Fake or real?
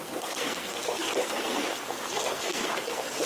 fake